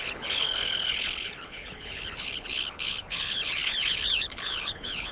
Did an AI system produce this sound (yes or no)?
yes